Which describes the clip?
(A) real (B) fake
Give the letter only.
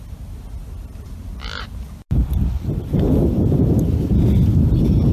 A